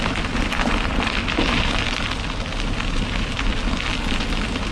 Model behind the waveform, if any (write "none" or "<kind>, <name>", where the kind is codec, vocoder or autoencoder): none